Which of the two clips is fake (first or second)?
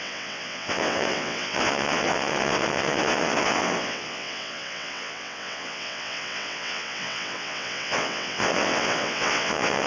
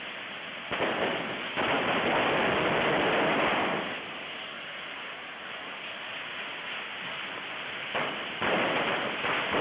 first